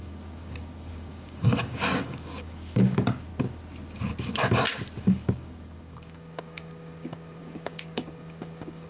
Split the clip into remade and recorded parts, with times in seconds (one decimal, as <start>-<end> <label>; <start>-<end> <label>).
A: 0.0-3.3 remade; 3.3-5.0 recorded; 5.0-8.9 remade

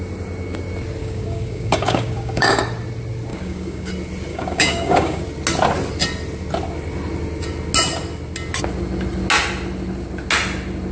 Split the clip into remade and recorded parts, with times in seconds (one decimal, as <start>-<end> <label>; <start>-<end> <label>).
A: 0.0-1.0 recorded; 1.0-2.6 remade; 2.6-3.3 recorded; 3.3-3.9 remade; 3.9-4.3 recorded; 4.3-5.2 remade; 5.2-10.9 recorded